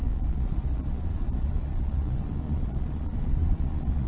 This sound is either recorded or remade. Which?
remade